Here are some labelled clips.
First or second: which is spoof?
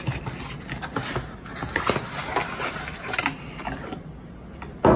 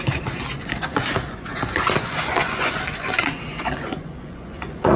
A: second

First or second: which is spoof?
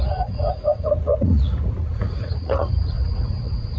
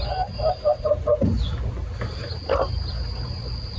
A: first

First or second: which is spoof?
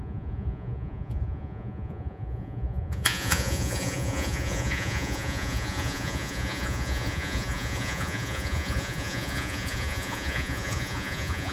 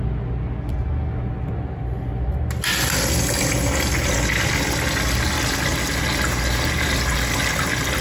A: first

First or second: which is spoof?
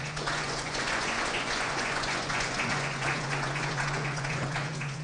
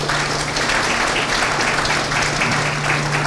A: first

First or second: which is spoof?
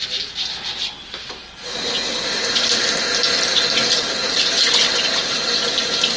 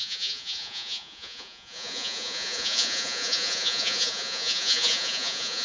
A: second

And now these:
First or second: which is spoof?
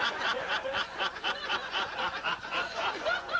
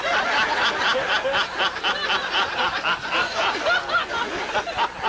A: first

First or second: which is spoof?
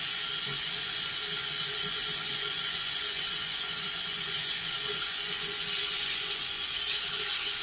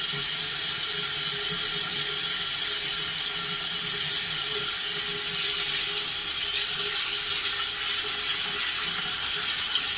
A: first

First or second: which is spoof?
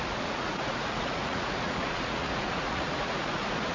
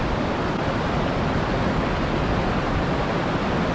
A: first